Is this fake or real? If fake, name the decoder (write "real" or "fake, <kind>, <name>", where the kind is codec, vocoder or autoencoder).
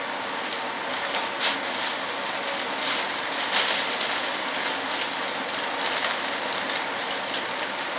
real